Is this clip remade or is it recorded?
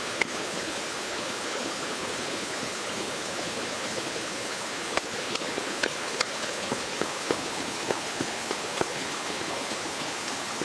remade